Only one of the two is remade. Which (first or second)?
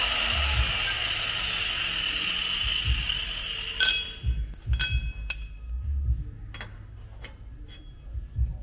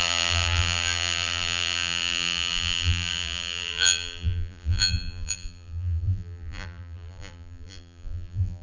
second